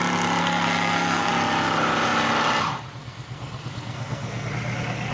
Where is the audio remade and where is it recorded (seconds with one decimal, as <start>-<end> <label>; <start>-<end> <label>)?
0.0-0.4 recorded; 0.4-1.3 remade; 1.3-3.0 recorded; 3.0-4.5 remade; 4.5-5.1 recorded